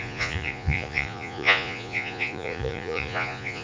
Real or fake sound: fake